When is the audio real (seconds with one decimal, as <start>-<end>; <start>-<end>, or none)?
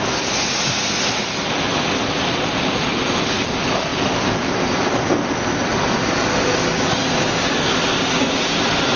0.0-9.0